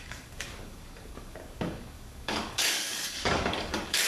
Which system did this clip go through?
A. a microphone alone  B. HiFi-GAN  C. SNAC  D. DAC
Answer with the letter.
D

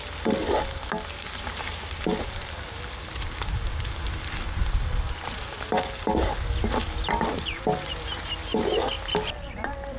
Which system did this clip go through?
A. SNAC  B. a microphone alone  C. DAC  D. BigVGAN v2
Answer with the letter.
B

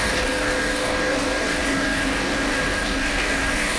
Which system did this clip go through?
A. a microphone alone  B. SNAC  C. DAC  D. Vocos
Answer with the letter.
C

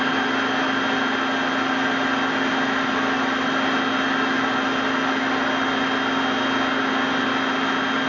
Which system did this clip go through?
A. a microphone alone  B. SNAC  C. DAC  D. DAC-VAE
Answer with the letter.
A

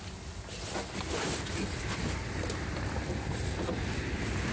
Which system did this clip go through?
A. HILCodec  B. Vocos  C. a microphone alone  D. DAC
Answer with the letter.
C